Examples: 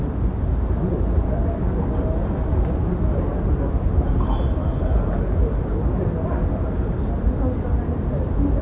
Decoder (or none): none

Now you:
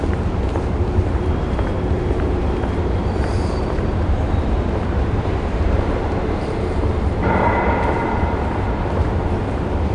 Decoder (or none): vocoder, BigVGAN v2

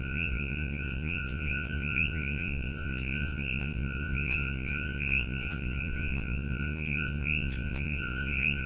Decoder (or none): vocoder, Vocos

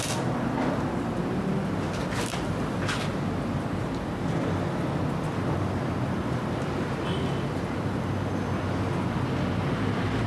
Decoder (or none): none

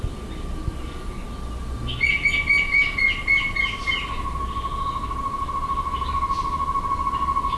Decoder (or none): none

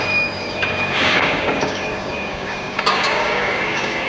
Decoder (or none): codec, DAC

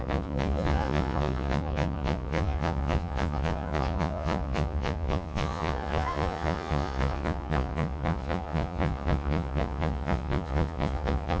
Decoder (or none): vocoder, Vocos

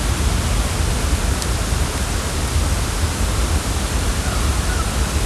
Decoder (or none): none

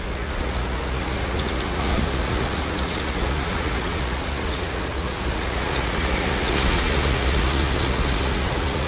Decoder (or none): vocoder, Vocos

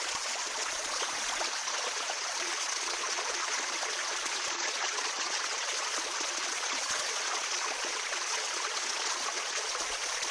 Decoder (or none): vocoder, Vocos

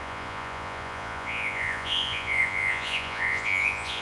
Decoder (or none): vocoder, Vocos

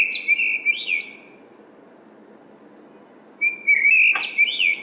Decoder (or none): none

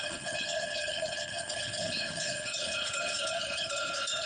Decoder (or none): codec, HILCodec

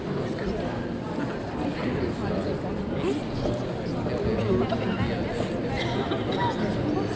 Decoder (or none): none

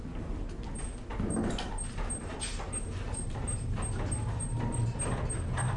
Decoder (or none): none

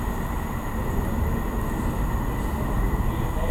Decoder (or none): none